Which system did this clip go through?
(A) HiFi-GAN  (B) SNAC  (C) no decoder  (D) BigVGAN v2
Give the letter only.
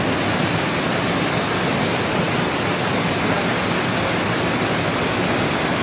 C